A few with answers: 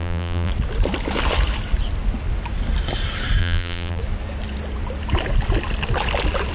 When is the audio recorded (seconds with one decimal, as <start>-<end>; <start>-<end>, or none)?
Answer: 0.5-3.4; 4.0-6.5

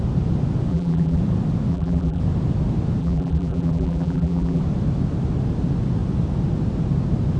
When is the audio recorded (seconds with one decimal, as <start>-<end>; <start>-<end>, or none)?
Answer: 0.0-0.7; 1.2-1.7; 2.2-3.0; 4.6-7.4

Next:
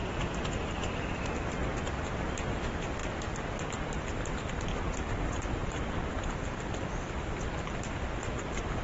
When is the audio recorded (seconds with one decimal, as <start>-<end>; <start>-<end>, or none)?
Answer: 1.3-8.8

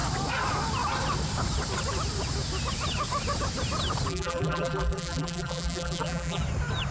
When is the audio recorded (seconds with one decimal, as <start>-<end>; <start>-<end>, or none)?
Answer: 0.0-4.1; 6.4-6.9

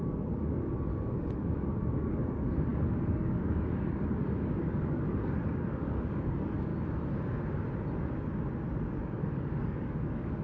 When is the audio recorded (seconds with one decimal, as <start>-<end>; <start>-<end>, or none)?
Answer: 6.7-9.0